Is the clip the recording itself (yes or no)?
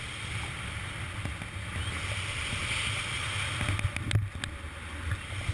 yes